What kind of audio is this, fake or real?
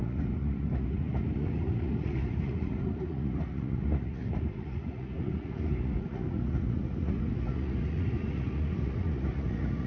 fake